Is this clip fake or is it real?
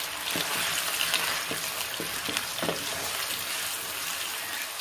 real